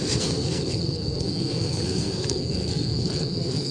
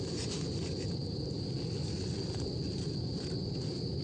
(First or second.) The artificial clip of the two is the first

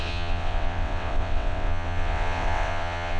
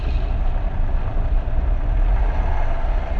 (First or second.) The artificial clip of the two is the first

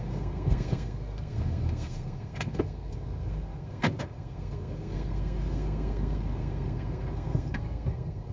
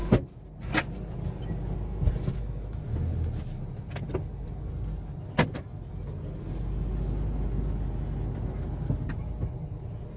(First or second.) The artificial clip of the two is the first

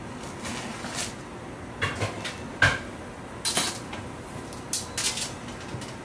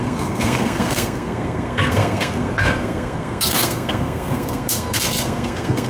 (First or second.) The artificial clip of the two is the second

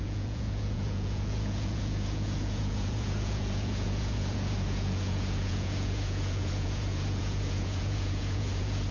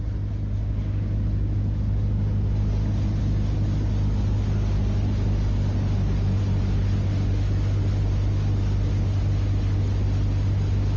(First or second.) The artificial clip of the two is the first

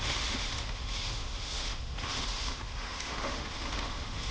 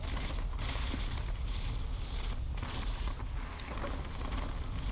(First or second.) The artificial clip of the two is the first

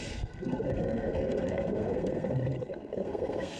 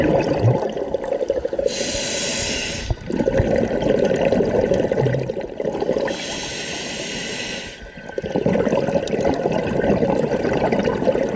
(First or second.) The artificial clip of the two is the first